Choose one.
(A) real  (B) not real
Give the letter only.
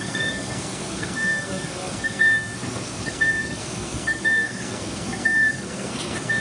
B